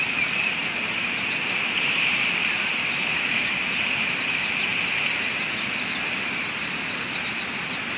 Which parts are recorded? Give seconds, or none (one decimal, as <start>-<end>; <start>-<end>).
4.7-8.0